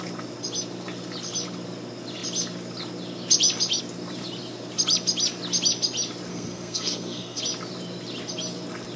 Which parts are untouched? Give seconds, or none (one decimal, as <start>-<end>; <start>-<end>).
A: 0.0-6.3; 7.4-9.0